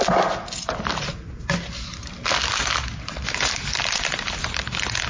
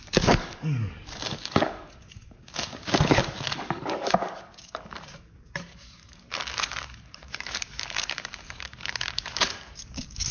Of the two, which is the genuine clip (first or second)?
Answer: first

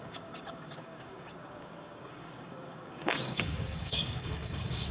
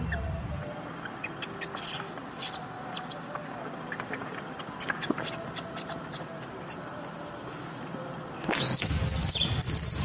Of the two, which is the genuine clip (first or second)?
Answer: second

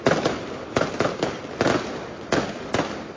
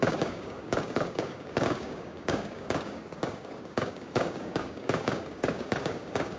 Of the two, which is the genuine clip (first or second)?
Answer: first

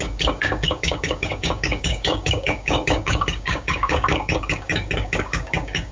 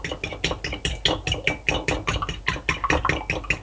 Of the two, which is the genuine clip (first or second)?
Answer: second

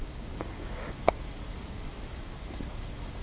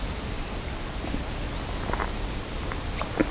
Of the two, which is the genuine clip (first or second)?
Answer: second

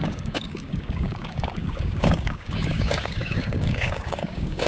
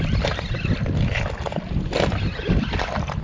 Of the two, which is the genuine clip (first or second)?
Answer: second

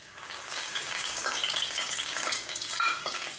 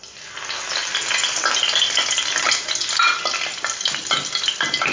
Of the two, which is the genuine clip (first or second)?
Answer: second